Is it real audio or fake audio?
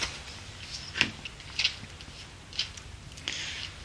real